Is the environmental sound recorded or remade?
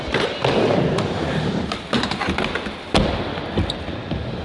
recorded